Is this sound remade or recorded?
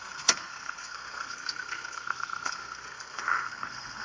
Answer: remade